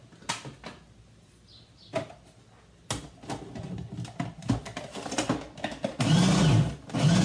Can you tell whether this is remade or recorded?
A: recorded